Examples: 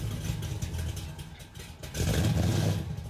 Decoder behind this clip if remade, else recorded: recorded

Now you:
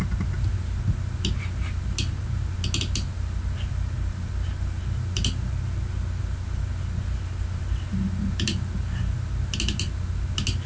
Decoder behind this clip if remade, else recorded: recorded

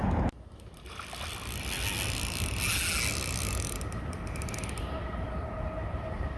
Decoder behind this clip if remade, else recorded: recorded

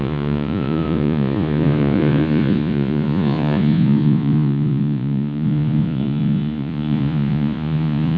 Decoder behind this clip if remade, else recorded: remade, vocoder, Vocos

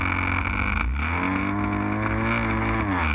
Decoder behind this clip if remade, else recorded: recorded